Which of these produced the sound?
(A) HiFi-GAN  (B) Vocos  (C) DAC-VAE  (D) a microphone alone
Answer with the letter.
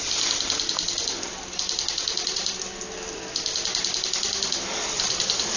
D